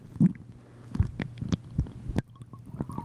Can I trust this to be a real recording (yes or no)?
yes